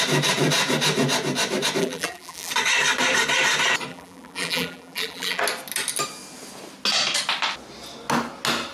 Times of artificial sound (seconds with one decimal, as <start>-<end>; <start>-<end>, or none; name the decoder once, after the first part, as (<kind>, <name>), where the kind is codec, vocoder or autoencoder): 1.8-2.5 (vocoder, BigVGAN v2); 3.9-5.4

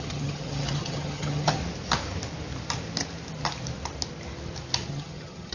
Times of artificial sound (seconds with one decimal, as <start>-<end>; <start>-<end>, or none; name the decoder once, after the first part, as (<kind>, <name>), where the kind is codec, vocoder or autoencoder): 0.0-1.6 (vocoder, HiFi-GAN); 4.9-5.5

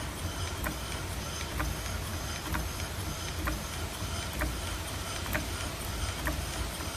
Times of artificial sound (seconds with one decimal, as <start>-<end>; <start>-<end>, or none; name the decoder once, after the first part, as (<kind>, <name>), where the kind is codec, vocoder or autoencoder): none